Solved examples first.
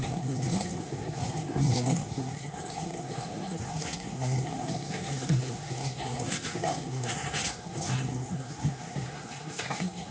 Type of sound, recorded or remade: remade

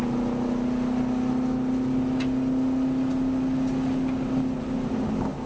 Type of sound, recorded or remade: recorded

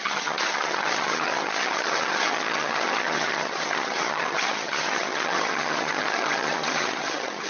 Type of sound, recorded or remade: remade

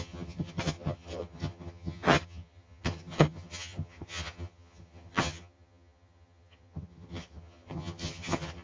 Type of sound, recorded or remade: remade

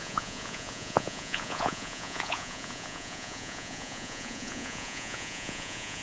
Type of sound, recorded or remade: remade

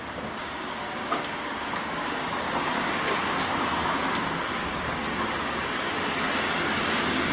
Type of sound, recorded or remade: remade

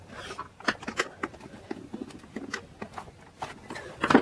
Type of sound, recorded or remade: recorded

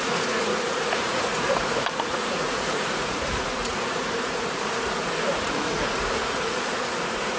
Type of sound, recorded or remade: remade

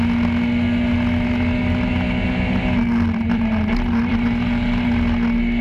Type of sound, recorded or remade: recorded